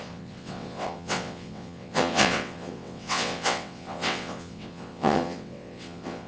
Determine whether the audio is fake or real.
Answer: fake